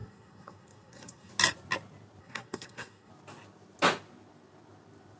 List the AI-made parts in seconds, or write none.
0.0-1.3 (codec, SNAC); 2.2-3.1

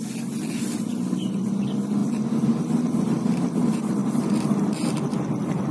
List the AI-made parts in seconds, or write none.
none

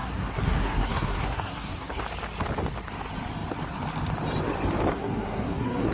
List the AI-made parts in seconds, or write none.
0.0-2.0 (codec, SNAC); 4.9-5.9